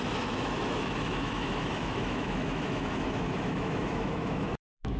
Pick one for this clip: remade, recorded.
remade